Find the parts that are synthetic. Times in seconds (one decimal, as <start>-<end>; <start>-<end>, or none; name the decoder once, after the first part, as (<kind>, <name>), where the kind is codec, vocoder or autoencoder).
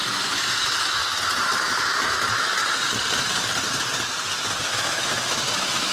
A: 0.0-1.0 (autoencoder, DAC-VAE); 1.6-2.6; 4.6-5.9